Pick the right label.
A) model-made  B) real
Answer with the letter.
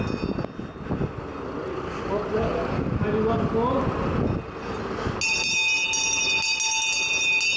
B